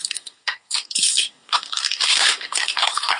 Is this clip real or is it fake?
fake